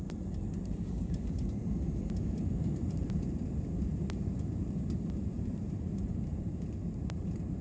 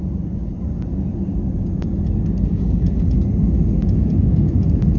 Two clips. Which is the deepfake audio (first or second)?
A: first